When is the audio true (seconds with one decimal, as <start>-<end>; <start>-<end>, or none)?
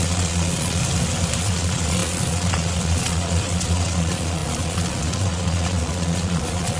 0.8-1.4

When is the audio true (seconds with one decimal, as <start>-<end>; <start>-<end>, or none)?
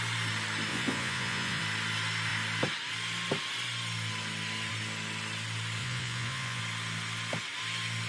0.0-0.7; 1.6-5.8; 6.6-8.1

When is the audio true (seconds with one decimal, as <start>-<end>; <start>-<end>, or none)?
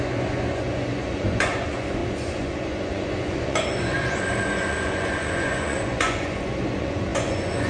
none